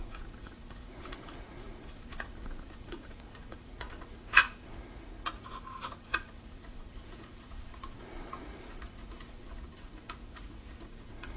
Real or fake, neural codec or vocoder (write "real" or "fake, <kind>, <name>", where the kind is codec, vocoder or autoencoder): fake, vocoder, Vocos